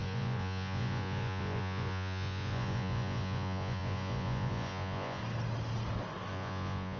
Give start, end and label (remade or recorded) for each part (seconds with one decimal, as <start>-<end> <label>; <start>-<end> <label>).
0.0-5.2 remade; 5.2-6.3 recorded; 6.3-7.0 remade